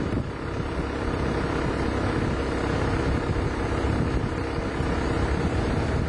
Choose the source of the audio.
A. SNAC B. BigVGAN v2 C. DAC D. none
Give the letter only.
D